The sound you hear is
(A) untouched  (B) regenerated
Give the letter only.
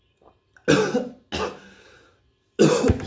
A